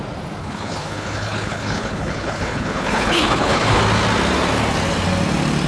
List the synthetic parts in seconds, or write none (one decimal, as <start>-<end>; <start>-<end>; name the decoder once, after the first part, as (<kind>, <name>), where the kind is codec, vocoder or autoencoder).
0.4-3.8 (codec, HILCodec)